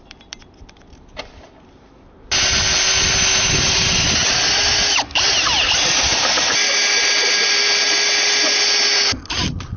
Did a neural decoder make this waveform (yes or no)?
no